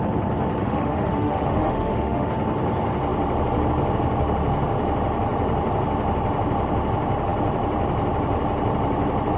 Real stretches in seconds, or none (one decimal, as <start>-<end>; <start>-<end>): 0.0-0.6; 2.3-9.4